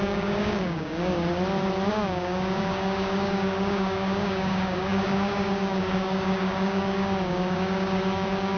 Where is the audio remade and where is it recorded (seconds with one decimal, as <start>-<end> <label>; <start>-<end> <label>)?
0.0-1.3 remade; 1.3-1.9 recorded; 1.9-8.6 remade